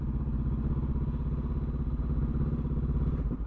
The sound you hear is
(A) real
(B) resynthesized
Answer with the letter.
A